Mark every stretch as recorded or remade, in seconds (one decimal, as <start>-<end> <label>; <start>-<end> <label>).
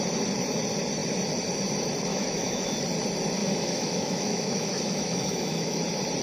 0.0-2.1 recorded; 2.1-2.7 remade; 2.7-3.4 recorded; 3.4-5.8 remade; 5.8-6.2 recorded